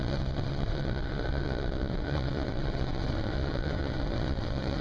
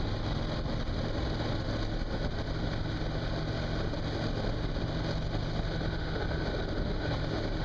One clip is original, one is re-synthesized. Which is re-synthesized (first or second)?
first